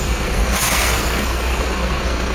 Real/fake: fake